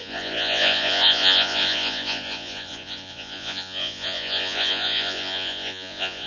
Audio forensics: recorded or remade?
remade